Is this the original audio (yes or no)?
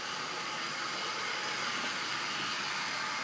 yes